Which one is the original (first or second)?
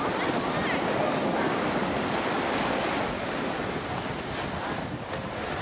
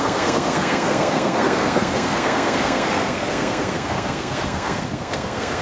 first